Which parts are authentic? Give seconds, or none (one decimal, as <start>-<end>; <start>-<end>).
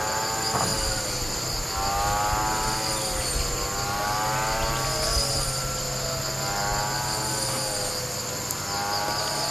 0.0-9.5